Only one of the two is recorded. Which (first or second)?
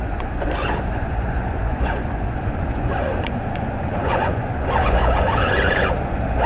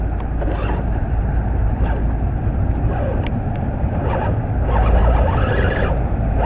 second